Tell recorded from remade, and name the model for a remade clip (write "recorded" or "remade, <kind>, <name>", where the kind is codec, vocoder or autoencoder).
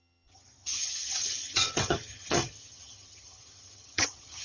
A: remade, vocoder, HiFi-GAN